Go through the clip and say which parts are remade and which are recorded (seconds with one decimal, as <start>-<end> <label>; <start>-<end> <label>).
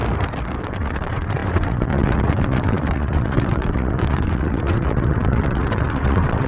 0.0-0.6 recorded; 0.6-6.5 remade